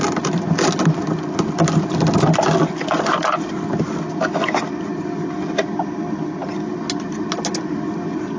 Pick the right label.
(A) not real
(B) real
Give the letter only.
B